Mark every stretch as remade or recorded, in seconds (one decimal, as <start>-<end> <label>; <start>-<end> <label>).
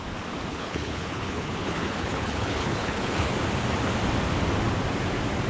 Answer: 0.0-0.5 recorded; 0.5-3.3 remade; 3.3-5.5 recorded